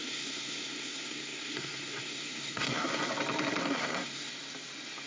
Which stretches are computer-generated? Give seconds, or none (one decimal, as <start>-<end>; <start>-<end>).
0.0-3.1; 3.6-4.3